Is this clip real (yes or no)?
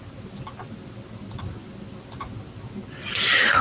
yes